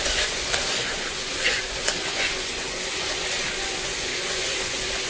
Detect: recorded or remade remade